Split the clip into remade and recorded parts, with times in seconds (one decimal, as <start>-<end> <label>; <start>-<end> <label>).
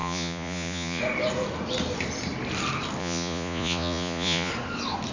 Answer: 0.0-1.0 remade; 1.0-3.0 recorded; 3.0-4.5 remade; 4.5-5.1 recorded